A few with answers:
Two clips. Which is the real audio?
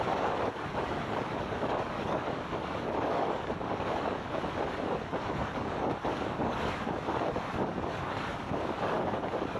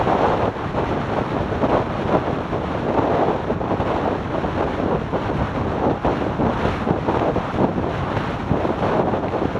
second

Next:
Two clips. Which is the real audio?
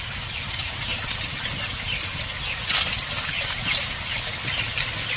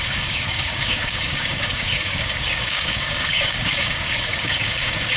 first